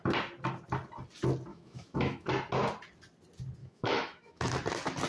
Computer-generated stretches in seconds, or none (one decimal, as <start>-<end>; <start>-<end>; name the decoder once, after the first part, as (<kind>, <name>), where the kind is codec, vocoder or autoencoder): 1.5-2.3 (autoencoder, DAC-VAE); 3.6-4.5